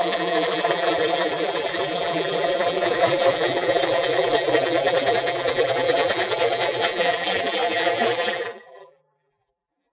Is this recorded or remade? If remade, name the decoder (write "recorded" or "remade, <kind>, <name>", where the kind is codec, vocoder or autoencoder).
remade, vocoder, BigVGAN v2